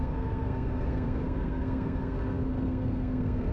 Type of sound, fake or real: fake